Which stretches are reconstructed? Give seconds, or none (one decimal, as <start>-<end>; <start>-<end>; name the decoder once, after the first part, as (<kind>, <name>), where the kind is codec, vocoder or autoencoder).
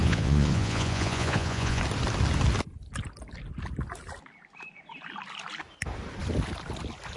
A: 0.0-1.8 (vocoder, Vocos)